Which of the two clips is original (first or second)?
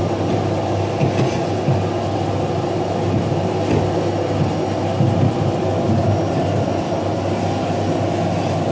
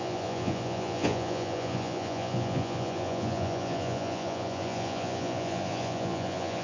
first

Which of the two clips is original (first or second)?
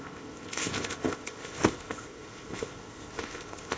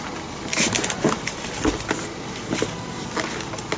second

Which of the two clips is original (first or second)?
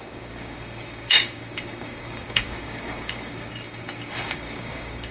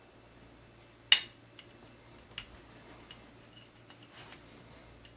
second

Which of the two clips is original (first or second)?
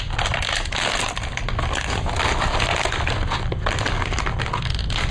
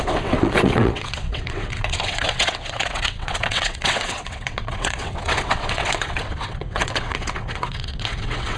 first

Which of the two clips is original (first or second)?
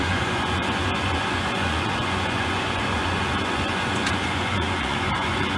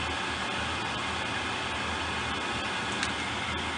second